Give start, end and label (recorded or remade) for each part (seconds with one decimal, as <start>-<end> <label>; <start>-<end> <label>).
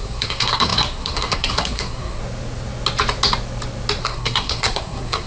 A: 0.0-2.2 remade; 2.2-4.0 recorded; 4.0-5.3 remade